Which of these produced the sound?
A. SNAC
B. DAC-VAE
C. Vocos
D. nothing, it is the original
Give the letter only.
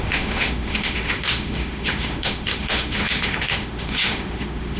B